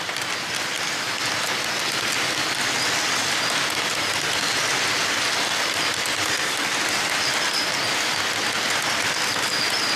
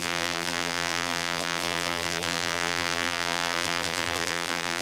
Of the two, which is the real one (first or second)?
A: first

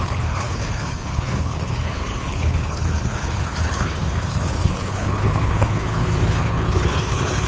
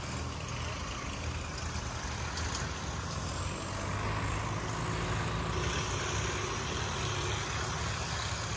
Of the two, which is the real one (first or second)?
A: second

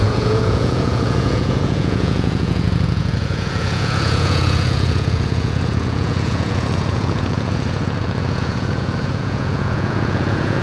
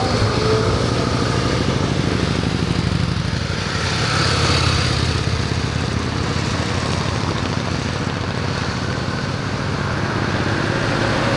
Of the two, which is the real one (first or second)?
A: second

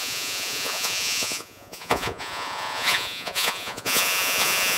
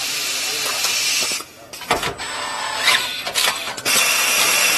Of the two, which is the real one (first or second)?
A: second